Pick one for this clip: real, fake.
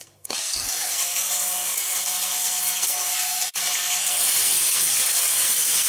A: fake